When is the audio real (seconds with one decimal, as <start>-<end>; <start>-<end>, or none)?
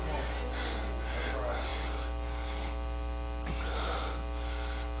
0.0-5.0